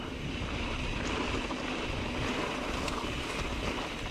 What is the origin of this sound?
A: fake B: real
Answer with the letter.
B